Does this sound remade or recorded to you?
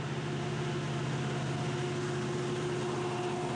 recorded